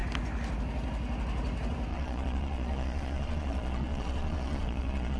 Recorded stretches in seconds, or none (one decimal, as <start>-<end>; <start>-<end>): 0.0-1.9